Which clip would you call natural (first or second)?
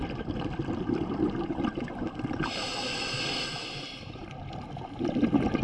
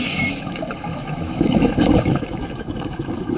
first